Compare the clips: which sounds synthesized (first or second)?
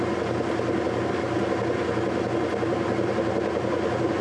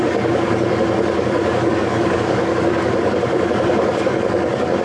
second